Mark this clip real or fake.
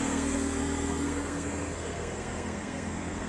fake